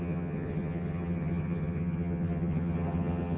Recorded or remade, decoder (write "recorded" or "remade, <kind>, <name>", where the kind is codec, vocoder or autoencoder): remade, vocoder, HiFi-GAN